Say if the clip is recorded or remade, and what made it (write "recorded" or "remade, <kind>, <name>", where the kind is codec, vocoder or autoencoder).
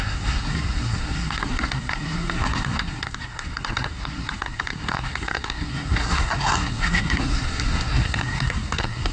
remade, codec, SNAC